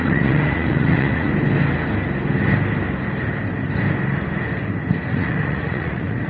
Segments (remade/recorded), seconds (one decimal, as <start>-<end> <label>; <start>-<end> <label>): 0.0-1.3 remade; 1.3-5.1 recorded; 5.1-6.3 remade